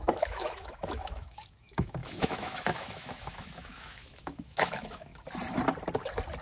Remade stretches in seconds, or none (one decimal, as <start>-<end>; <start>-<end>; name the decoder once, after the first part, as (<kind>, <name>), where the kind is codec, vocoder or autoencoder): 0.0-5.1 (autoencoder, DAC-VAE)